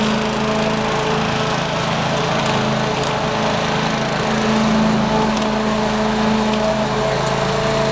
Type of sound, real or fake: real